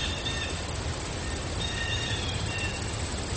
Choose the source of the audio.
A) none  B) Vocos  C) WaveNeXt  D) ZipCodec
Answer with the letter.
A